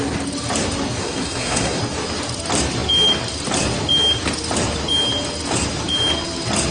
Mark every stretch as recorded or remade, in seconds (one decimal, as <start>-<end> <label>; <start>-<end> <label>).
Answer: 0.0-1.0 recorded; 1.0-1.8 remade; 1.8-6.7 recorded